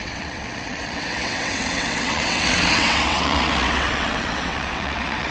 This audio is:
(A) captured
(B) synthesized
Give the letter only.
B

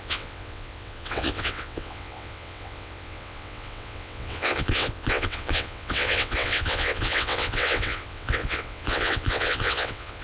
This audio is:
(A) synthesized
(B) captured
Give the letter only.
A